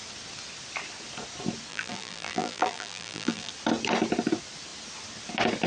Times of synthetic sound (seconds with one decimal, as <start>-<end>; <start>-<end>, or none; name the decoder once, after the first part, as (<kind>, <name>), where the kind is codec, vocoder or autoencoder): 1.7-3.5 (vocoder, BigVGAN v2)